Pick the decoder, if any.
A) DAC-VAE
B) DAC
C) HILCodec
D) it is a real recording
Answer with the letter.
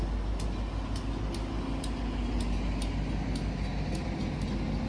D